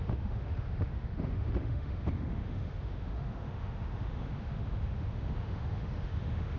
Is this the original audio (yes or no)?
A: no